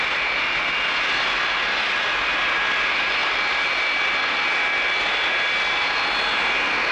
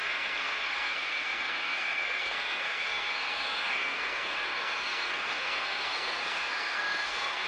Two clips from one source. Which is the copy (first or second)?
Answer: second